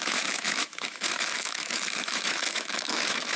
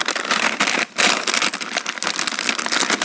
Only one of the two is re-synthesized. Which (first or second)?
first